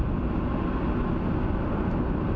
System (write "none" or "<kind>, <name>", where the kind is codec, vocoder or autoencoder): none